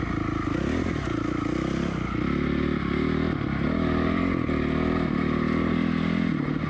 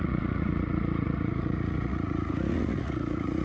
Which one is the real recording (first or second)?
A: first